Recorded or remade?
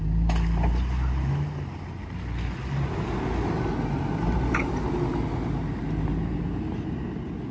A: recorded